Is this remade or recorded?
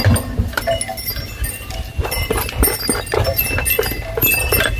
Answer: remade